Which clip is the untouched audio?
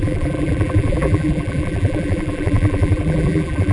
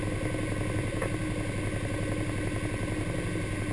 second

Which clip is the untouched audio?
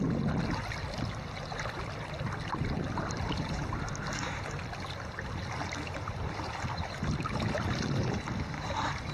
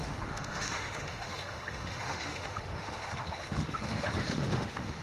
first